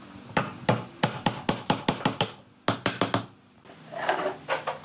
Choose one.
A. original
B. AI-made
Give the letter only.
A